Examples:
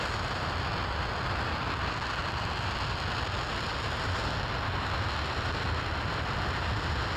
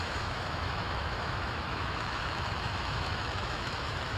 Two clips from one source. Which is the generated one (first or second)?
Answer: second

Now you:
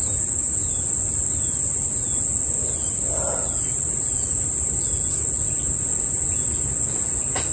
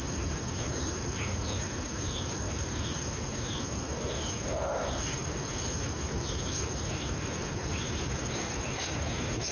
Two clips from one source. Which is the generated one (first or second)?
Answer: second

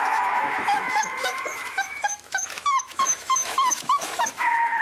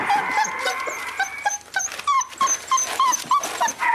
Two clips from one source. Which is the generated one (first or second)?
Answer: first